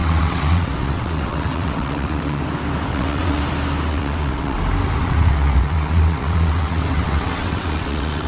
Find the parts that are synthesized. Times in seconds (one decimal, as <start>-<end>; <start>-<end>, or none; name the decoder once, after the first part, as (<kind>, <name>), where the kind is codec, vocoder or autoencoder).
0.0-2.4 (vocoder, WaveNeXt); 2.9-3.4; 3.9-4.6; 5.0-8.3